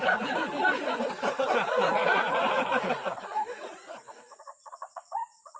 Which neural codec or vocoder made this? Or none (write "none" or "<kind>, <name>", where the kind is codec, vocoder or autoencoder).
vocoder, Vocos